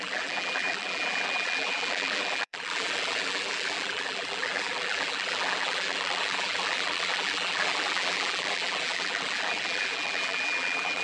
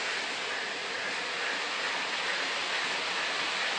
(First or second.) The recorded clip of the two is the second